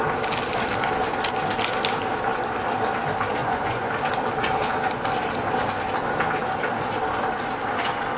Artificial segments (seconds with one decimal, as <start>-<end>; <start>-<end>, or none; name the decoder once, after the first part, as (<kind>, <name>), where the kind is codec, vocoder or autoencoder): 3.4-3.9 (vocoder, Vocos)